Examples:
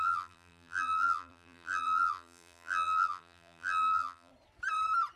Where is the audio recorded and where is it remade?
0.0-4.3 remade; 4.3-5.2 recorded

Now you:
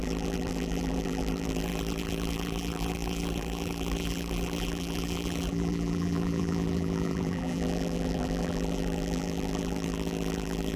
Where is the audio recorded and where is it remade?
0.0-10.8 remade

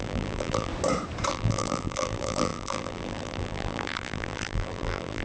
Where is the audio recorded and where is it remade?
0.0-0.7 remade; 0.7-1.3 recorded; 1.3-5.2 remade

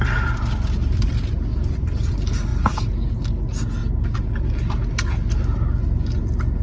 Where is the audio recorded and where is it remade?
0.0-1.5 recorded; 1.5-2.1 remade; 2.1-6.6 recorded

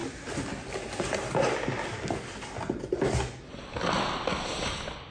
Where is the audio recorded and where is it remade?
0.0-5.1 recorded

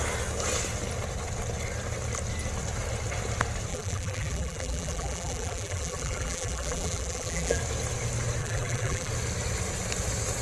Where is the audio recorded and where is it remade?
0.0-3.7 recorded; 3.7-7.6 remade; 7.6-8.4 recorded; 8.4-9.1 remade; 9.1-10.4 recorded

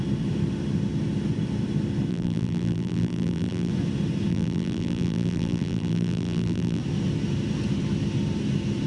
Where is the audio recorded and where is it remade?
0.0-2.1 recorded; 2.1-3.7 remade; 3.7-4.3 recorded; 4.3-6.8 remade; 6.8-8.9 recorded